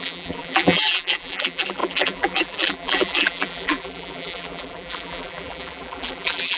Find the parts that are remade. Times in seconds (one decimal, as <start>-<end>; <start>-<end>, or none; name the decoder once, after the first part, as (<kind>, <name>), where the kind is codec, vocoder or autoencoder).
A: 0.0-6.6 (vocoder, BigVGAN v2)